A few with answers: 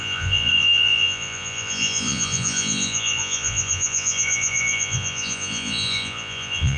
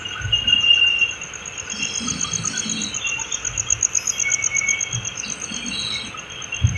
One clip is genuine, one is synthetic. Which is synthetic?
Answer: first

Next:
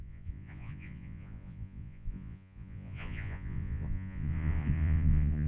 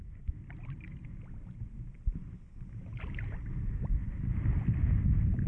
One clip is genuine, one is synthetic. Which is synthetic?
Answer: first